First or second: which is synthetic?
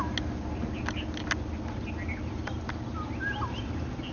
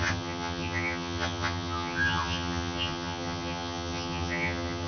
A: second